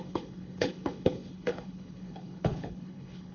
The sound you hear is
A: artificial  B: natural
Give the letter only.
A